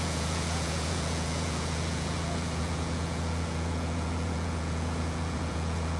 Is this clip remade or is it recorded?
remade